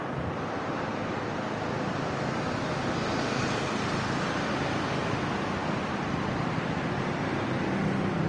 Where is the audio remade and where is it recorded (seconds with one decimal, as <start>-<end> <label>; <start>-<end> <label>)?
0.0-8.3 recorded